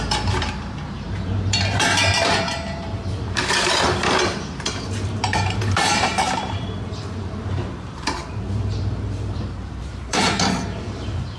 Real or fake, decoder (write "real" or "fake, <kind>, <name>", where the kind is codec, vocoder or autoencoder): fake, vocoder, BigVGAN v2